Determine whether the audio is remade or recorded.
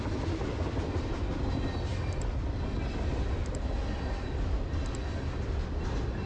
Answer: recorded